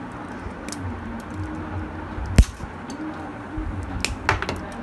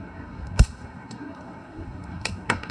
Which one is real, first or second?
first